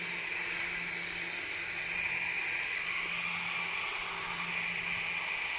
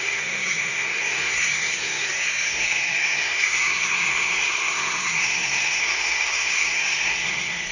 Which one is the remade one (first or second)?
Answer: second